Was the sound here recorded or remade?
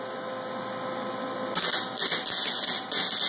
recorded